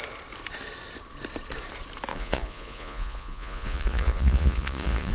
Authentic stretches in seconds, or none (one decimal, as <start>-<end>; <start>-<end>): 0.0-2.1